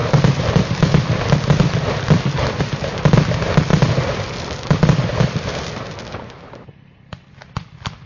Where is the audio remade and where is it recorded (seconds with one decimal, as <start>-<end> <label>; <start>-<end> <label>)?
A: 0.0-2.6 remade; 2.6-3.7 recorded; 3.7-6.5 remade; 6.5-8.1 recorded